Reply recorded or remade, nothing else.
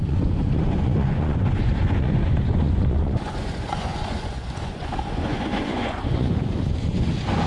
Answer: remade